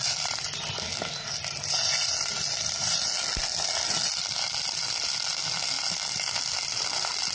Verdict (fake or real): real